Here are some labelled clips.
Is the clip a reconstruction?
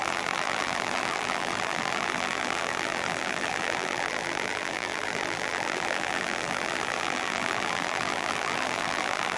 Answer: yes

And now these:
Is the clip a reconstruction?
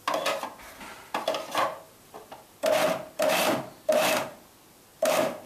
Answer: no